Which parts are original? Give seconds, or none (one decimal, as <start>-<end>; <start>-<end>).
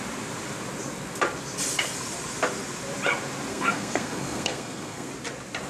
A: 0.0-3.5; 5.1-5.7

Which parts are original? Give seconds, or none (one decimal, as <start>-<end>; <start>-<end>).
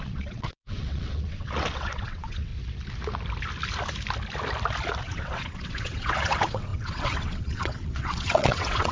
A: 2.5-5.0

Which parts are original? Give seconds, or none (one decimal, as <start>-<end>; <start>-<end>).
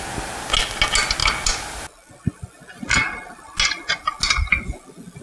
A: 0.0-5.2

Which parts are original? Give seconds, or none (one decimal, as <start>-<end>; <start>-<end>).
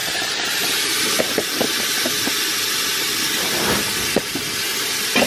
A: 1.2-5.3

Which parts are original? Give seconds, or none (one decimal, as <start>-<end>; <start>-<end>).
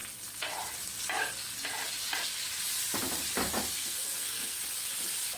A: 0.0-3.7; 4.6-5.4